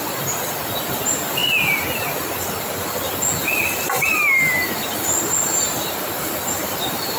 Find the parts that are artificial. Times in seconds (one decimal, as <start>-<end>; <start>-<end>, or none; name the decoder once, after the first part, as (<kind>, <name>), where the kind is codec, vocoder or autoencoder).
3.4-4.2 (vocoder, BigVGAN v2)